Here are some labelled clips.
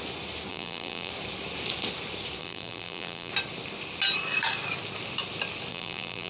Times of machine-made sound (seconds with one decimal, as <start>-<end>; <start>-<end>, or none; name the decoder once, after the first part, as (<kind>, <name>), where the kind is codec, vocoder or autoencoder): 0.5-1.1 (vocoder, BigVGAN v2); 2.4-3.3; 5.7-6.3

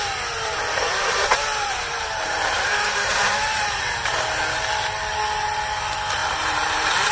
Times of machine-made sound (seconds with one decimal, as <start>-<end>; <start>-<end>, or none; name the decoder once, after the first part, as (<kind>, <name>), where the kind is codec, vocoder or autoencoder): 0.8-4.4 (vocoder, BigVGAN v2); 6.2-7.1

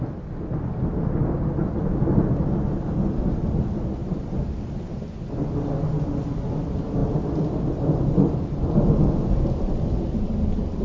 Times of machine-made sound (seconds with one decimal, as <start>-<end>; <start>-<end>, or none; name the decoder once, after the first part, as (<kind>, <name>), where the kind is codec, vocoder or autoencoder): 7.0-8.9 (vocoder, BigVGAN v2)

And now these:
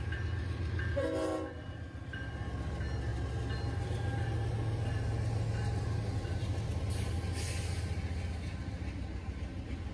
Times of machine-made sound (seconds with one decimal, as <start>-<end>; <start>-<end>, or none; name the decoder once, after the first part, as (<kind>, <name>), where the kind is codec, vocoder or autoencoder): none

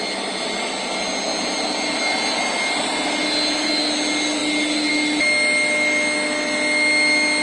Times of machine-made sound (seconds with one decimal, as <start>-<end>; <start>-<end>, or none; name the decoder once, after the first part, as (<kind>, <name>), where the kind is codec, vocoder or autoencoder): none

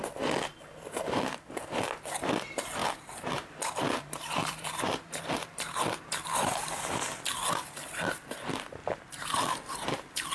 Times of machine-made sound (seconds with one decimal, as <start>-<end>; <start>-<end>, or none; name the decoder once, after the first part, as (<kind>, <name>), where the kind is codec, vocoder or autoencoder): 2.8-5.2 (vocoder, BigVGAN v2); 8.8-10.3

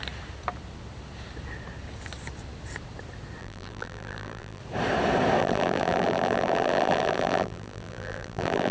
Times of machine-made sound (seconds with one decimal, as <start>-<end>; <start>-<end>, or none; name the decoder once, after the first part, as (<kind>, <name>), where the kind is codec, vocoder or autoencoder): 3.4-4.6 (vocoder, BigVGAN v2); 5.4-8.7

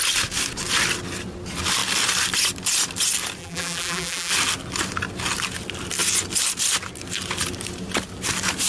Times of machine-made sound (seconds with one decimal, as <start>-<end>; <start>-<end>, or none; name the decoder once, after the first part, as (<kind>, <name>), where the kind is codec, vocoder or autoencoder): 3.4-4.3 (vocoder, BigVGAN v2)